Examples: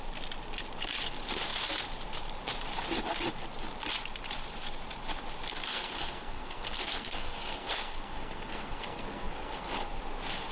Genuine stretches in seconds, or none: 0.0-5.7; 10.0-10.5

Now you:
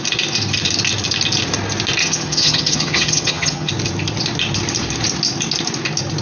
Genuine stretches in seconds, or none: 0.0-2.0; 3.7-6.2

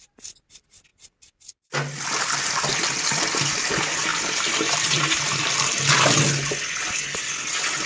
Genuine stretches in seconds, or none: 0.0-4.1; 5.5-7.9

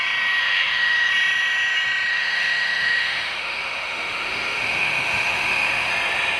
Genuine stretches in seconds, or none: 0.0-0.4; 1.1-2.1; 5.9-6.4

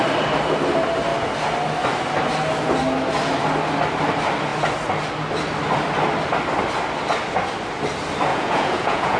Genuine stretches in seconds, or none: 0.0-8.3

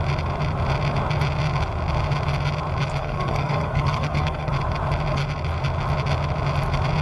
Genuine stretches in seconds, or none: 0.0-3.0; 4.5-7.0

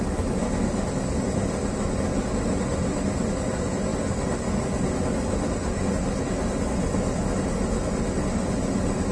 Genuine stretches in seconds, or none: 0.0-9.1